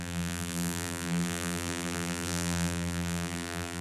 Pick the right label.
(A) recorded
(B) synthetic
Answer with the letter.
B